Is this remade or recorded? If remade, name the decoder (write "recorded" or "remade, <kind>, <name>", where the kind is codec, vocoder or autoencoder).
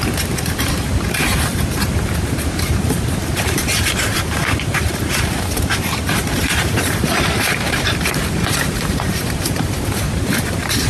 remade, vocoder, BigVGAN v2